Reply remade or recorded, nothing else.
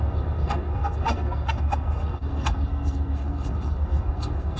remade